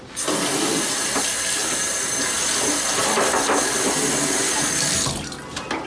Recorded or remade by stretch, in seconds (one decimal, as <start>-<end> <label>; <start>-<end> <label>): 0.0-5.9 recorded